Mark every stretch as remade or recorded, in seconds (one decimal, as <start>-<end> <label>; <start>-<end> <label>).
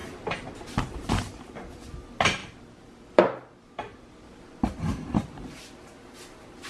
0.0-1.1 remade; 1.1-2.4 recorded; 2.4-3.1 remade; 3.1-3.9 recorded; 3.9-6.0 remade; 6.0-6.7 recorded